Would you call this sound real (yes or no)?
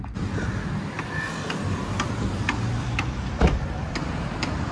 yes